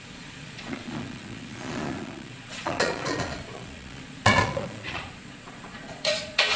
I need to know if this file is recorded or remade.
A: remade